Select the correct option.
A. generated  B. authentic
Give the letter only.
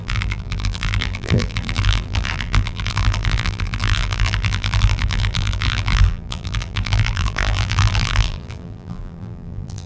A